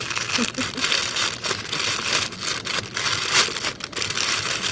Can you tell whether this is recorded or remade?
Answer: recorded